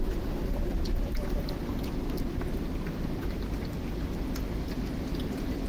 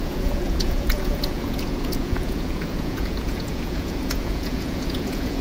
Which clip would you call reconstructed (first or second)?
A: second